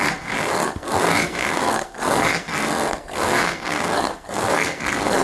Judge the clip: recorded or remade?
remade